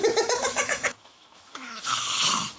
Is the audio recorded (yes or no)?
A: no